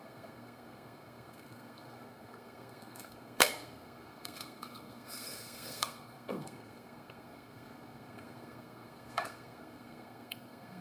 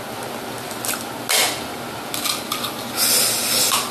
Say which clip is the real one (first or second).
second